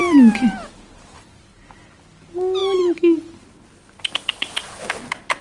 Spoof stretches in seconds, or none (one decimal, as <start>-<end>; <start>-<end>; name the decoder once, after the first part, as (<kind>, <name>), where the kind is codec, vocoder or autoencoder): none

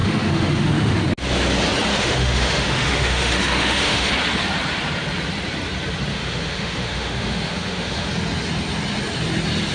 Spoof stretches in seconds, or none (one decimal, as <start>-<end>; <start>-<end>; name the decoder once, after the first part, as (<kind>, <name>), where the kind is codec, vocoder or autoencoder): 0.0-1.0 (autoencoder, DAC-VAE); 1.9-4.1; 6.1-8.1

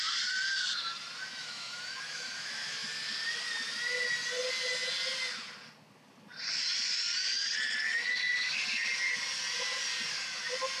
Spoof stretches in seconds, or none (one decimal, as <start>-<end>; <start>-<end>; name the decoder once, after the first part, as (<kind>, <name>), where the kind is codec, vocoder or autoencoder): 1.4-2.9 (autoencoder, DAC-VAE)

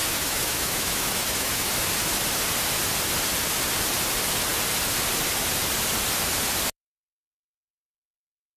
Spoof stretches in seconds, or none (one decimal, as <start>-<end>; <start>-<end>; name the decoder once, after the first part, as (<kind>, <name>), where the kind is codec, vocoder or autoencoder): 0.0-1.7 (autoencoder, DAC-VAE)